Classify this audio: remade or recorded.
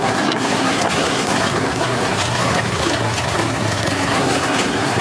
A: remade